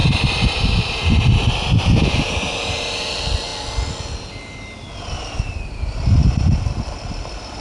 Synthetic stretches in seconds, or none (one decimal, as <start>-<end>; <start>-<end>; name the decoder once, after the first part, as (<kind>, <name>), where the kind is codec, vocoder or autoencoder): 0.0-3.1 (vocoder, BigVGAN v2)